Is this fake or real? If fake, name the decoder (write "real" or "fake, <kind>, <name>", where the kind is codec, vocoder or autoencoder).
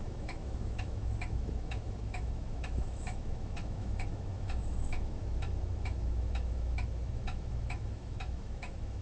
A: fake, autoencoder, DAC-VAE